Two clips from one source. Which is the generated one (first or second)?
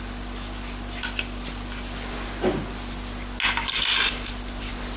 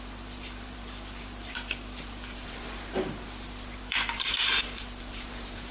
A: second